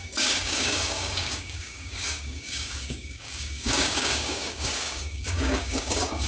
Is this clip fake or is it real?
fake